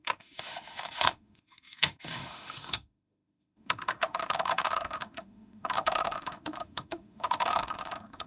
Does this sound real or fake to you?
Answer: fake